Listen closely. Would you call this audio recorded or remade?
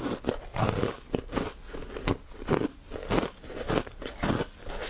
recorded